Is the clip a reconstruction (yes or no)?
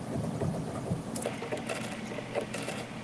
no